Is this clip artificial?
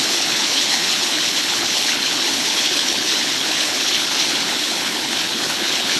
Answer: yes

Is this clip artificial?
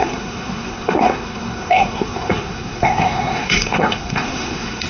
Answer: yes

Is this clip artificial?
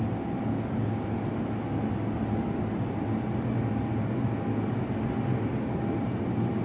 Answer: no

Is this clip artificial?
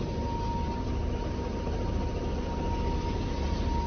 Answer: no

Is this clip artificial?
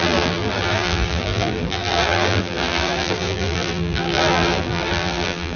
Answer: yes